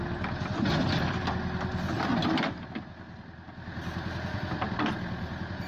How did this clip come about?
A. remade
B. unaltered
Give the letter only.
B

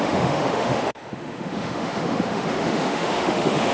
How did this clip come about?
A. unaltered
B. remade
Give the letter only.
B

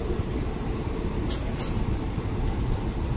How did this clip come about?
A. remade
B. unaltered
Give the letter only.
B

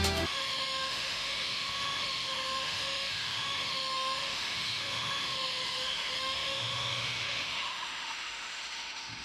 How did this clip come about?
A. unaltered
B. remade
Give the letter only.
B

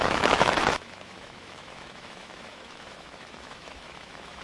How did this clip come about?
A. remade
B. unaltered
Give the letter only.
A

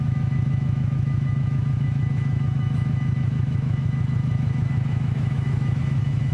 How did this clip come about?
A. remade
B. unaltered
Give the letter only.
A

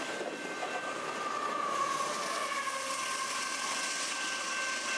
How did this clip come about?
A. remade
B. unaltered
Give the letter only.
B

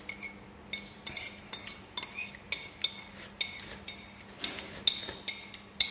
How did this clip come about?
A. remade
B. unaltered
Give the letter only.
B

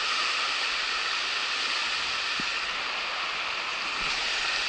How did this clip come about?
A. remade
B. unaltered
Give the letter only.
B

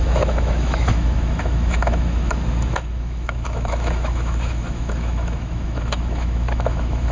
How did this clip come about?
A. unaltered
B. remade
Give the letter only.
B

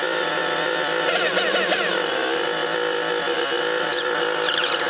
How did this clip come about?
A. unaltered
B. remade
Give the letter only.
A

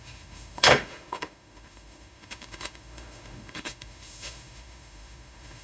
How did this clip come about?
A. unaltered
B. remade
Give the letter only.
B